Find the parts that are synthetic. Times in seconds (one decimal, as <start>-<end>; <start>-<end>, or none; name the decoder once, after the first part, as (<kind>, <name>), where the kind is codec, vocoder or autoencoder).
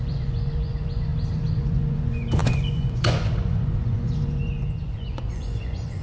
0.0-1.1 (vocoder, Vocos); 1.6-6.0